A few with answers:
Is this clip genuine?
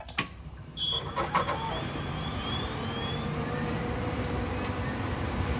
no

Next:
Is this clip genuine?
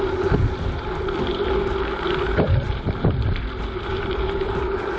no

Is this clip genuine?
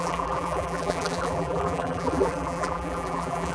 no